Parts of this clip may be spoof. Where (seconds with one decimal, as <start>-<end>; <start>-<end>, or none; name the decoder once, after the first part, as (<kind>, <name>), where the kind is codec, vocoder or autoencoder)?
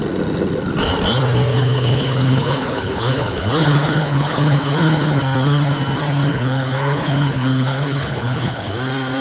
1.5-5.2 (codec, HILCodec); 6.3-8.7